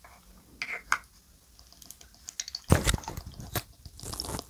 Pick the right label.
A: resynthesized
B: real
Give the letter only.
B